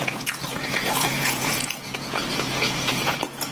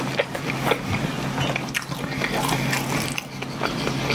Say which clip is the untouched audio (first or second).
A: second